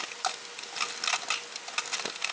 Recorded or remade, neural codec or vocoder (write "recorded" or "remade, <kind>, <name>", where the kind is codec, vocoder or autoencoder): recorded